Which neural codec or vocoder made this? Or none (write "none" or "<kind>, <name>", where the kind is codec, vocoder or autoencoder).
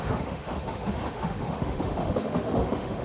autoencoder, DAC-VAE